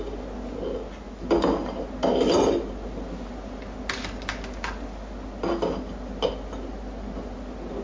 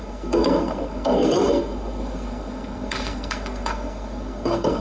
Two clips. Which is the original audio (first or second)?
first